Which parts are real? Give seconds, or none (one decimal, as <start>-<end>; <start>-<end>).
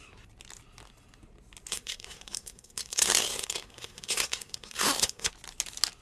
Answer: 0.0-1.7; 5.3-6.0